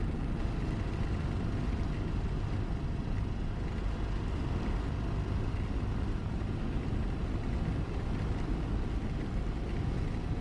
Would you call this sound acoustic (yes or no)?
yes